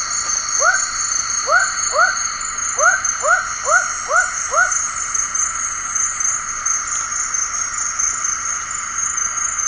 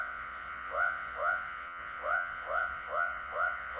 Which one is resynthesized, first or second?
second